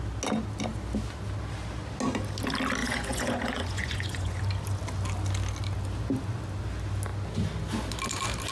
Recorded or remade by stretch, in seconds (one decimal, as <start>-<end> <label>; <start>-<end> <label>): 0.0-2.8 recorded; 2.8-4.4 remade; 4.4-8.5 recorded